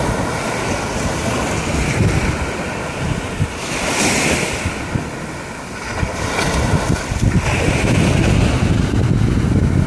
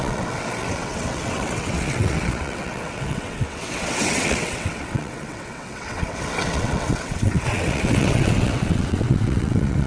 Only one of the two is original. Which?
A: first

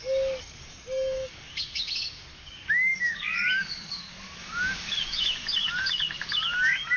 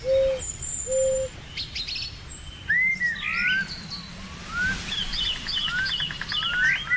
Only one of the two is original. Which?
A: second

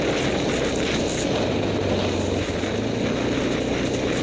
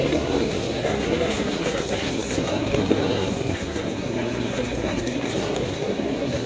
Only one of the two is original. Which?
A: first